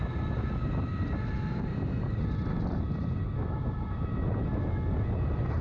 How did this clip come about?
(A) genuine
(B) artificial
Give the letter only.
A